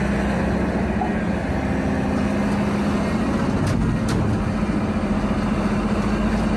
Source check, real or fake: real